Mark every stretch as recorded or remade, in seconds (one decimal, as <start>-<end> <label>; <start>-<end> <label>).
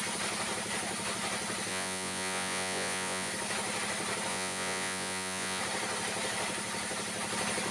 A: 0.0-1.7 recorded; 1.7-3.3 remade; 3.3-4.3 recorded; 4.3-5.6 remade; 5.6-7.7 recorded